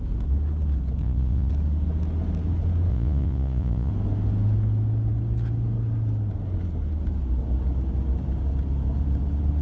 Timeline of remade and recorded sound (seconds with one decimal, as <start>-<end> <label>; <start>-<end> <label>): 0.0-1.0 recorded; 1.0-1.5 remade; 1.5-2.9 recorded; 2.9-3.9 remade; 3.9-9.6 recorded